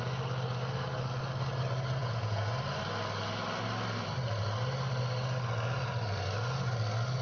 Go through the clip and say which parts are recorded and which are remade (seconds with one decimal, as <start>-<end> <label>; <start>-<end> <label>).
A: 0.0-2.0 recorded; 2.0-2.5 remade; 2.5-7.2 recorded